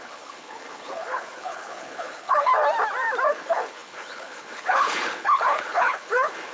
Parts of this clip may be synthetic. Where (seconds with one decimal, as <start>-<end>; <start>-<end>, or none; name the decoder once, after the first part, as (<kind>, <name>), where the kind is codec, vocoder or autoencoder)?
0.0-2.5 (codec, HILCodec); 3.3-6.5